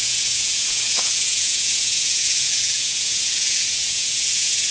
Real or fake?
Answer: fake